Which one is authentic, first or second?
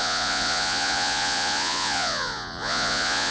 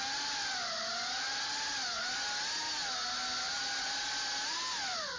second